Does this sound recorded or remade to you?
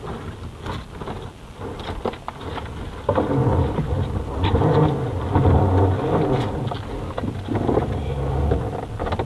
recorded